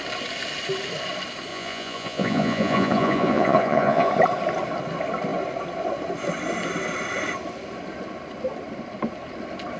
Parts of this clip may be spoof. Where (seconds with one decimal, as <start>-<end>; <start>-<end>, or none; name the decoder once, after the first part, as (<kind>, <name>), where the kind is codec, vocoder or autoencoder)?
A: 1.5-4.1 (vocoder, Vocos)